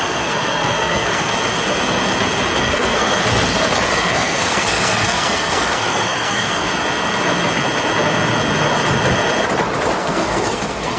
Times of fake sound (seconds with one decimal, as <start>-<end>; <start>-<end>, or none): 0.0-1.3; 2.6-3.2; 3.9-6.7; 10.0-11.0